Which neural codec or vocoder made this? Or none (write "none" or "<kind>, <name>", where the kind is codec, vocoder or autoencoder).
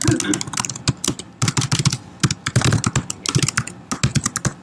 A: none